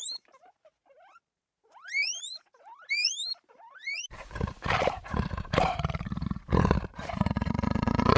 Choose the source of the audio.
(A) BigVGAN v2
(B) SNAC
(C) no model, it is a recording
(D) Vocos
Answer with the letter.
A